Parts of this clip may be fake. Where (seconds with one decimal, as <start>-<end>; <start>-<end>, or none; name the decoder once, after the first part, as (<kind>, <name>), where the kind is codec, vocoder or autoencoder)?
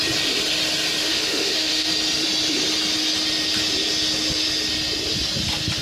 1.0-1.9 (autoencoder, DAC-VAE)